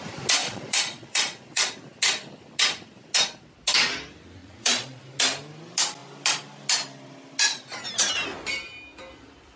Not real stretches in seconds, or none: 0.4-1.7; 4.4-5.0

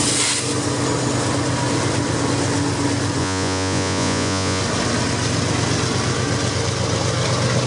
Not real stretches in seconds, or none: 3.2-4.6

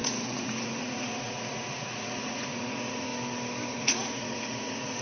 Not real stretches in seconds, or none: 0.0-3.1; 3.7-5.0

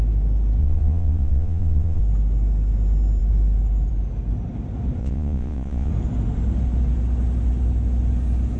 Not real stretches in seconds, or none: 0.6-2.0; 5.0-5.9

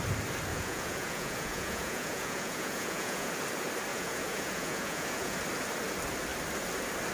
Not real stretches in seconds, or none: 0.5-3.3; 3.9-5.4